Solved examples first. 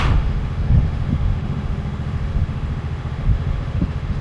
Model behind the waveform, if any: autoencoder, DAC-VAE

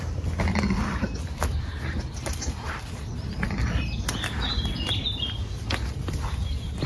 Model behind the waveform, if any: none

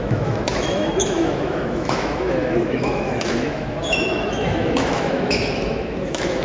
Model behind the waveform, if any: autoencoder, DAC-VAE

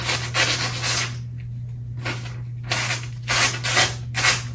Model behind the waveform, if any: none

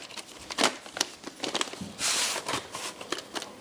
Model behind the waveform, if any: none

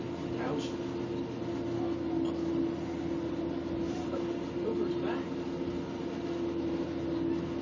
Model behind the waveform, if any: none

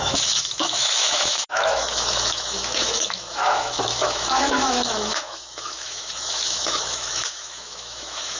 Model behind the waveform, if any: autoencoder, DAC-VAE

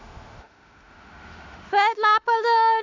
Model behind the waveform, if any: autoencoder, DAC-VAE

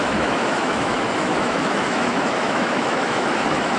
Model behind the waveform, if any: autoencoder, DAC-VAE